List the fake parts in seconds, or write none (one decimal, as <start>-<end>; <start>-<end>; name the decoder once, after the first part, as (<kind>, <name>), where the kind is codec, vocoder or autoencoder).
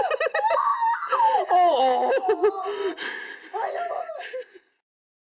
none